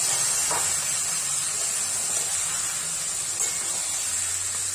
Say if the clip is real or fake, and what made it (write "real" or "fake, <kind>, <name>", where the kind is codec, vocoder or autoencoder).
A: real